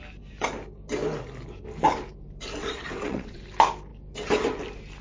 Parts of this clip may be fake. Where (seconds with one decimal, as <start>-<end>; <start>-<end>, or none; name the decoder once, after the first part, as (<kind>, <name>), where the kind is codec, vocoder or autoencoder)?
2.6-3.4 (vocoder, WaveNeXt)